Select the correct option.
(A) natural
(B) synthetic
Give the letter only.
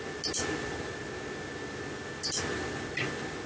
A